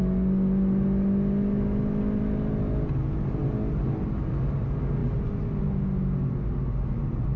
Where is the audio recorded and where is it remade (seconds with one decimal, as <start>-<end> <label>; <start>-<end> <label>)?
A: 0.0-7.4 recorded